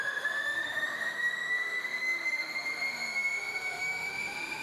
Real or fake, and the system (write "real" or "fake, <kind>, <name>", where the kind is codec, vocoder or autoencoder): fake, autoencoder, DAC-VAE